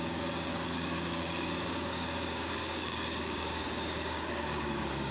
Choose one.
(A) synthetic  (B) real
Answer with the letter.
A